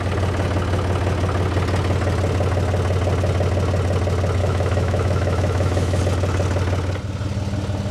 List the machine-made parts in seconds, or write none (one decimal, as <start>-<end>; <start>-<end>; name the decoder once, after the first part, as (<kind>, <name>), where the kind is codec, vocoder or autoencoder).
4.4-6.0 (autoencoder, DAC-VAE)